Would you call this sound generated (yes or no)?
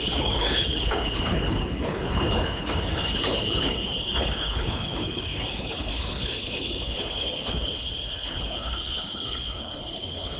yes